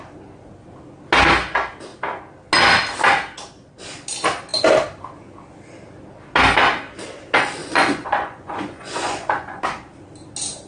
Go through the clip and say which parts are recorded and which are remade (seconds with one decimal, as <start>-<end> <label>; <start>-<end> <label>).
0.0-7.6 recorded; 7.6-9.6 remade; 9.6-10.7 recorded